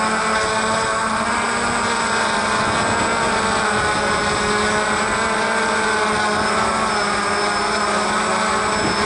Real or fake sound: real